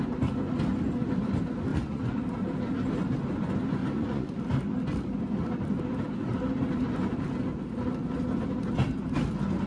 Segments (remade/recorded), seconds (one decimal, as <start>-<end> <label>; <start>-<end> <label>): 0.0-1.7 recorded; 1.7-2.2 remade; 2.2-3.8 recorded; 3.8-4.4 remade; 4.4-9.7 recorded